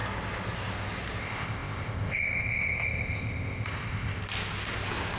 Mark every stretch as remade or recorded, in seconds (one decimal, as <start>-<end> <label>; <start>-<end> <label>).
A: 0.0-1.2 recorded; 1.2-4.2 remade; 4.2-5.2 recorded